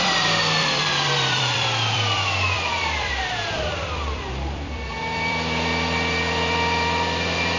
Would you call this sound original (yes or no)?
no